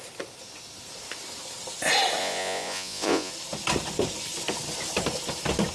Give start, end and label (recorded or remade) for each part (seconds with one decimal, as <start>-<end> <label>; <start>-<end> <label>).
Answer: 0.0-2.2 recorded; 2.2-3.3 remade; 3.3-5.7 recorded